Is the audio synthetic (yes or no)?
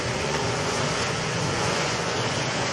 yes